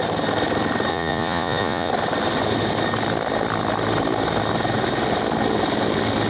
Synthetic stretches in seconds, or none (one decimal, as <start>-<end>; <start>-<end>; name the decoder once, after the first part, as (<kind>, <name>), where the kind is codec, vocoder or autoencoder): 0.9-1.9 (vocoder, Vocos)